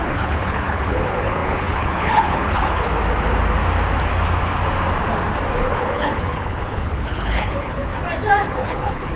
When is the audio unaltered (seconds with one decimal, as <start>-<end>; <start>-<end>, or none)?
2.9-5.6; 7.9-8.5

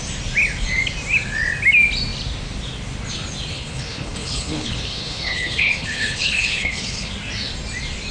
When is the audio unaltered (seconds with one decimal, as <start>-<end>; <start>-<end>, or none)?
0.0-3.5; 7.1-8.1

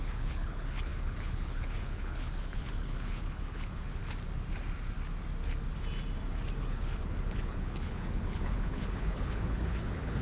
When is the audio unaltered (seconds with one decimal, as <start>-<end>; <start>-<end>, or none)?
4.0-6.6

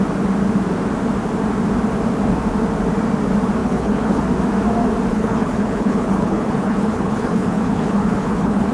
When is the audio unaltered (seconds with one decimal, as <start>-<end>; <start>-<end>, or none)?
0.0-3.6; 4.2-5.1